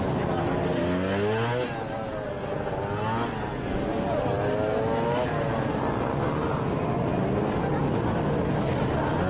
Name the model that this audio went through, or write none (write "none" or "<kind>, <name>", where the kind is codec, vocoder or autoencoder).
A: none